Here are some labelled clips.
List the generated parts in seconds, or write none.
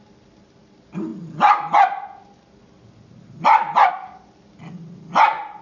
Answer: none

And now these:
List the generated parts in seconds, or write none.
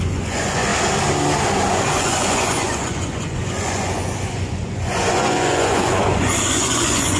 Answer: 0.0-0.7; 1.7-7.2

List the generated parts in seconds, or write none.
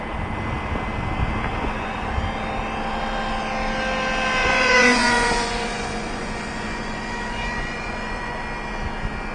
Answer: 1.5-2.1; 4.4-8.4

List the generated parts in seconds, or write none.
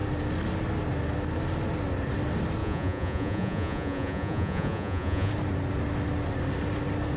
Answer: 2.6-5.3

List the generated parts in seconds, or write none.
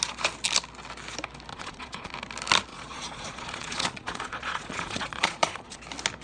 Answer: 1.5-2.1; 2.7-5.8